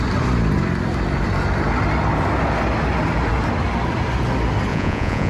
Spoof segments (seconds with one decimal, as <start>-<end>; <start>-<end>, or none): 4.7-5.3